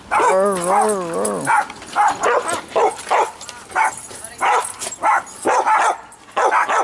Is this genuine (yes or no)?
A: yes